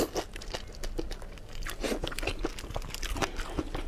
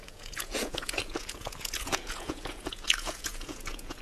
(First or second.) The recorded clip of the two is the first